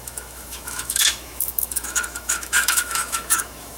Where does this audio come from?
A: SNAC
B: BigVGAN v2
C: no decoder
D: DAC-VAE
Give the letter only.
D